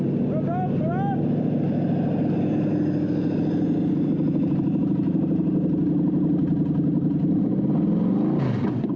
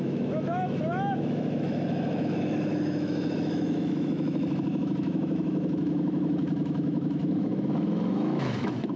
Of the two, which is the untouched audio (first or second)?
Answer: first